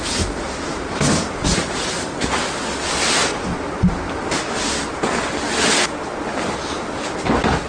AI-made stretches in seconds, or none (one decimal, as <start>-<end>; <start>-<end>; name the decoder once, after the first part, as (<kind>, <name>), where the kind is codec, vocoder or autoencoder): none